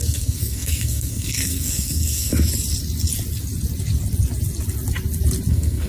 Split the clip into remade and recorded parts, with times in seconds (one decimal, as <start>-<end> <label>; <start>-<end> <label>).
0.0-2.3 remade; 2.3-5.5 recorded; 5.5-5.9 remade